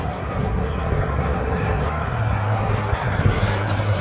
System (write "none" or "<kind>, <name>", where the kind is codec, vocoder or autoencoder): codec, SNAC